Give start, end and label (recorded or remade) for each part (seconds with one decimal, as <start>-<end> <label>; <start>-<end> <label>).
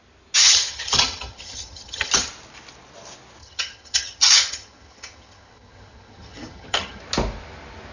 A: 0.0-0.4 recorded; 0.4-2.3 remade; 2.3-3.4 recorded; 3.4-7.0 remade; 7.0-7.9 recorded